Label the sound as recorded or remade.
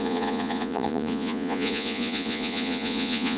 remade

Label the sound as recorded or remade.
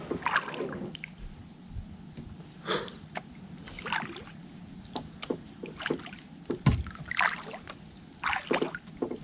recorded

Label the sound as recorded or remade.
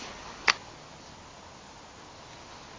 recorded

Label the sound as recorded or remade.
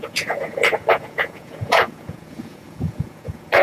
remade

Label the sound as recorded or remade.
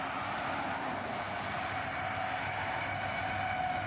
recorded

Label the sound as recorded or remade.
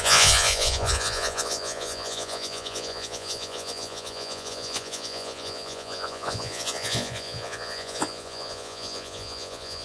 remade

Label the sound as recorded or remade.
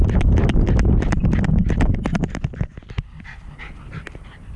remade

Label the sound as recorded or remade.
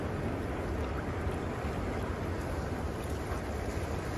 recorded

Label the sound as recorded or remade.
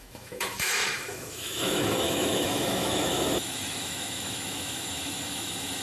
remade